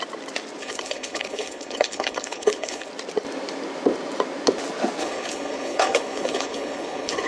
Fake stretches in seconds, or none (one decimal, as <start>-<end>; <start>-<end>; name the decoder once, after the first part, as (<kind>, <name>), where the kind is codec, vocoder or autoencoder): 0.6-2.9 (codec, HILCodec); 5.0-7.3